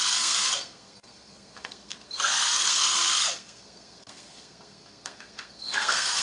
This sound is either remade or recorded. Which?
remade